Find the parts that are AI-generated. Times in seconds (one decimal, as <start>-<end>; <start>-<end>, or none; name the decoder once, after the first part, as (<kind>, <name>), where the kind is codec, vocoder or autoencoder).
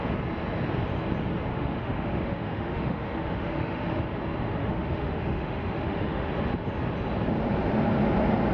1.5-4.0 (autoencoder, DAC-VAE); 4.6-6.3